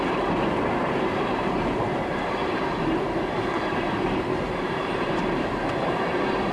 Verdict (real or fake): fake